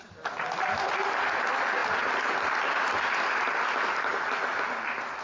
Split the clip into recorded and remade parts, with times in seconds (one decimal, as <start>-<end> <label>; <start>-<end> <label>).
0.0-5.2 recorded